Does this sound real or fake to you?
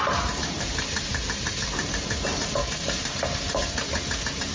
fake